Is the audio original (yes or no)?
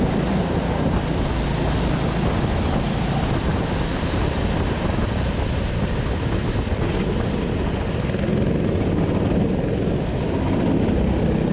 yes